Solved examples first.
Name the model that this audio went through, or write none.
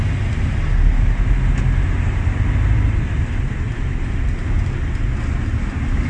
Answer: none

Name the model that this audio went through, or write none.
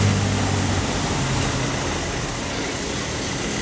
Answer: none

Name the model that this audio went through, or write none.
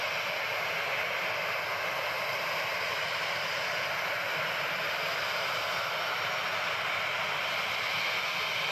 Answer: none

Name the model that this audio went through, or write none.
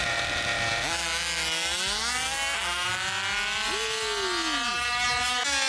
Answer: none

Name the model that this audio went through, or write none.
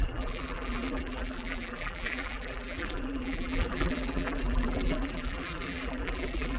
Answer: vocoder, BigVGAN v2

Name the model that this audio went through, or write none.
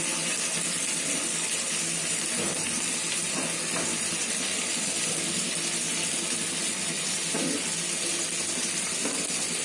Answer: none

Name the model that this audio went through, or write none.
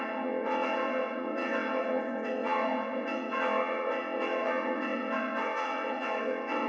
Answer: vocoder, WaveNeXt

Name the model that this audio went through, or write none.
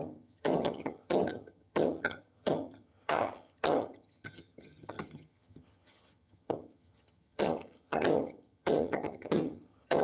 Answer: vocoder, HiFi-GAN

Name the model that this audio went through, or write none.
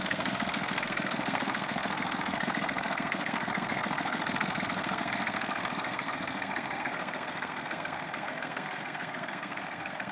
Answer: codec, SNAC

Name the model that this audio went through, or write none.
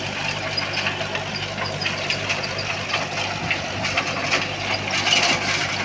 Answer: none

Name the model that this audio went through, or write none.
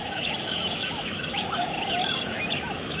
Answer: autoencoder, DAC-VAE